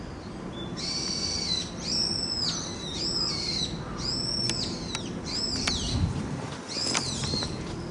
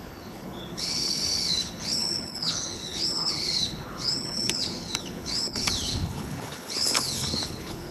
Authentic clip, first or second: first